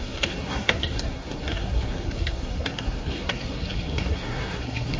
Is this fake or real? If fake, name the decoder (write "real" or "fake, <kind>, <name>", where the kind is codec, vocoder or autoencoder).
fake, codec, SNAC